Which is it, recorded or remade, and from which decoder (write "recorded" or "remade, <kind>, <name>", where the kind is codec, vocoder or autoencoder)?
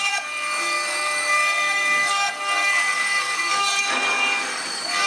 remade, codec, DAC